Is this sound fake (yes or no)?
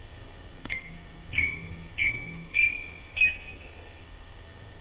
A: yes